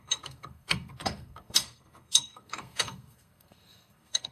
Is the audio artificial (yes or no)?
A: yes